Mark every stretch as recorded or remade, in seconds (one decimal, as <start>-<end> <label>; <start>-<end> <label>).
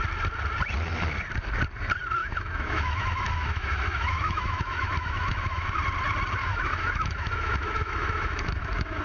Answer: 0.0-2.2 recorded; 2.2-5.8 remade; 5.8-6.4 recorded; 6.4-9.0 remade